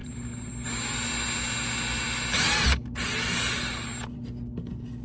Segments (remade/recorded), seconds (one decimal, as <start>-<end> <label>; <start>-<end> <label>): 0.0-0.5 remade; 0.5-5.0 recorded